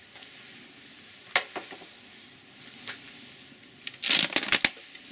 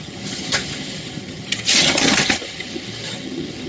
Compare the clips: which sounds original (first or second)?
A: first